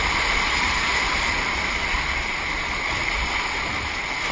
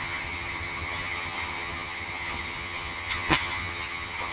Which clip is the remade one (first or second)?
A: second